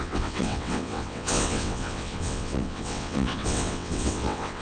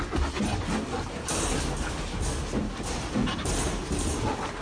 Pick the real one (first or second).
second